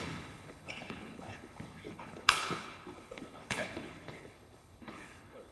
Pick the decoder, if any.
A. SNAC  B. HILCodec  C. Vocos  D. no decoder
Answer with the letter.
B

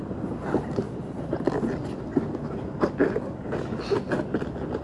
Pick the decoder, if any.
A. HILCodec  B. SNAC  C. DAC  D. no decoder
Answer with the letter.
D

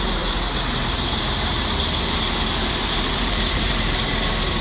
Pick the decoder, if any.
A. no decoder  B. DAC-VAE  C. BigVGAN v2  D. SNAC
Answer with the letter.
C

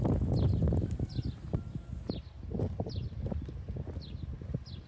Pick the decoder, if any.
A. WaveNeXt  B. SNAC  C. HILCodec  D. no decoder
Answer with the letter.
D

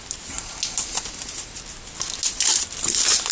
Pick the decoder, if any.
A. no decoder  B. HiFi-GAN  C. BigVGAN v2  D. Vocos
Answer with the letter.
A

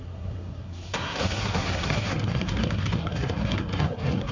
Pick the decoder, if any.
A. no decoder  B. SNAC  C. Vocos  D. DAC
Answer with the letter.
B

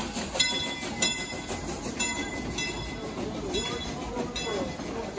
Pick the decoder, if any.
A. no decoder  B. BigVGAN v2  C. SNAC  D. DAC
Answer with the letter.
A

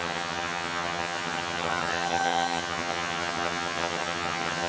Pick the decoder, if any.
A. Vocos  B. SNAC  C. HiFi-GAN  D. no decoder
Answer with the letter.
C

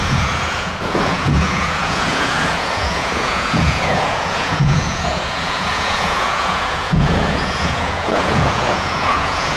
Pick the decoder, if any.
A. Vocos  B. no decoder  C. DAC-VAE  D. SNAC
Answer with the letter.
A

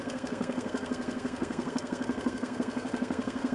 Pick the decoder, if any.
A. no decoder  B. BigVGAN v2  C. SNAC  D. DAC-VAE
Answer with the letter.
C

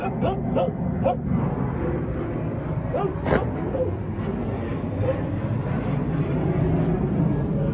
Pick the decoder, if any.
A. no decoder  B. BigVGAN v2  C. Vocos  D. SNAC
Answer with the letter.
A